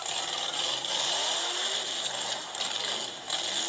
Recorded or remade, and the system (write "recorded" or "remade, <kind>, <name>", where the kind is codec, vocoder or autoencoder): recorded